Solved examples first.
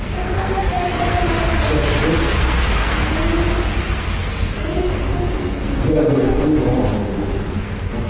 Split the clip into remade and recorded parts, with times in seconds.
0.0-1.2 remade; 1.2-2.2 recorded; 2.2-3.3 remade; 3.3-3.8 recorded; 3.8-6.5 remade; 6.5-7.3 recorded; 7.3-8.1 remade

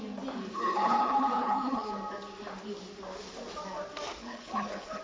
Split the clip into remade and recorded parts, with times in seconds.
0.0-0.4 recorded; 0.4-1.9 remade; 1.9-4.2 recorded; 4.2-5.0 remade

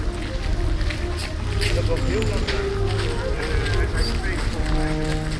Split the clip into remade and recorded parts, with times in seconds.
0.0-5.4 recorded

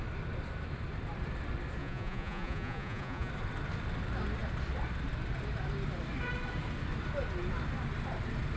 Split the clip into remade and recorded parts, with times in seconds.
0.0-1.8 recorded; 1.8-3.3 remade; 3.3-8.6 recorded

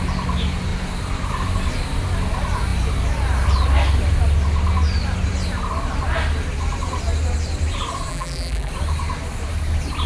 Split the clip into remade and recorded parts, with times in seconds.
0.0-8.1 recorded; 8.1-8.7 remade; 8.7-10.1 recorded

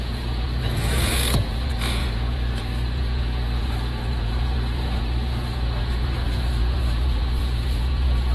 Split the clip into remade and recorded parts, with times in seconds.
0.0-8.3 remade